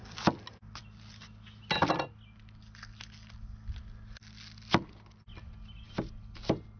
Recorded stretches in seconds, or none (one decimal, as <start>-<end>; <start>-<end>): 0.0-6.8

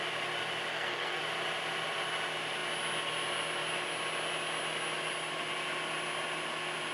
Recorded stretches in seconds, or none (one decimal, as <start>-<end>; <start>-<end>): 0.0-0.7; 1.2-6.9

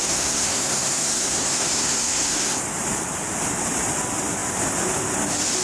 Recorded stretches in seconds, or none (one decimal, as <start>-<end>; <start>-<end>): 2.6-5.6

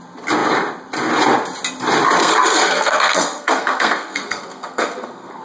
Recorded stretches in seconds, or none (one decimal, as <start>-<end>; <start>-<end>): 0.0-2.2

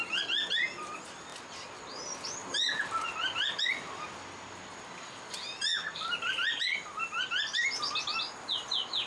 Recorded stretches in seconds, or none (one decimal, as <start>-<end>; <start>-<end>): 0.0-9.1

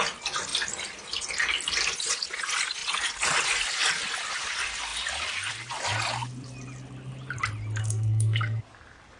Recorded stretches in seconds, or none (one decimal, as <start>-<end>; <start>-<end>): 0.0-7.8; 8.6-9.2

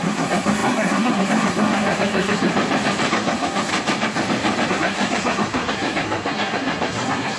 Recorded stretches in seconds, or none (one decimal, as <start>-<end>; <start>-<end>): 2.5-3.1; 3.7-4.7